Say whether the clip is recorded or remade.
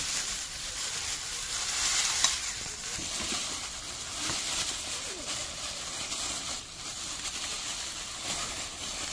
recorded